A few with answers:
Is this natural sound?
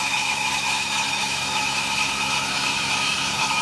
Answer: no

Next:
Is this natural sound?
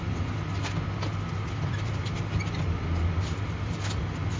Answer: yes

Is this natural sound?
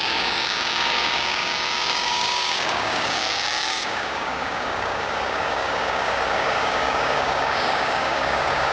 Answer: no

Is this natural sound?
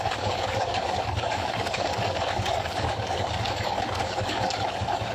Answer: no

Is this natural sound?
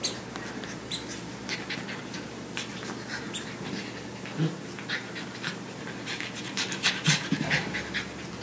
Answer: yes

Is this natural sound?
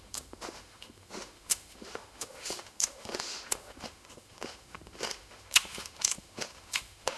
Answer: no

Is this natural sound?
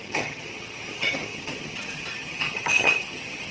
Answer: no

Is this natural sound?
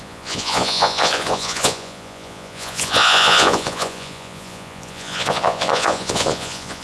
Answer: no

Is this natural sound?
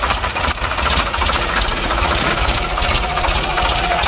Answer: no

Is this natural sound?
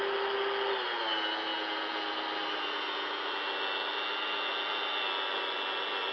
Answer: yes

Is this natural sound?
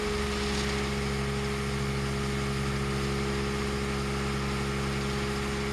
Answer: yes